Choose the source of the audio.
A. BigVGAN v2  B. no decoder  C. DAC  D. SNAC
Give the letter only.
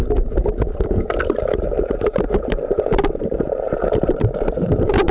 A